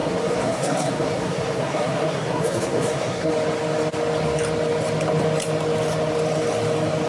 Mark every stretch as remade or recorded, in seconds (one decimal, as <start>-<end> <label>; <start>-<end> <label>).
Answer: 0.0-3.3 remade; 3.3-7.1 recorded